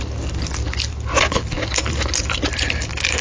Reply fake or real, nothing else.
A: real